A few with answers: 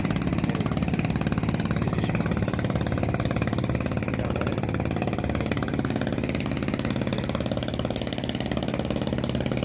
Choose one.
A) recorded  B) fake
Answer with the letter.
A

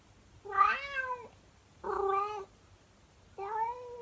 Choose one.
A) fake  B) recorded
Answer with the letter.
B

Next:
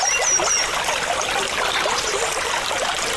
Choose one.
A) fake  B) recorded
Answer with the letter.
B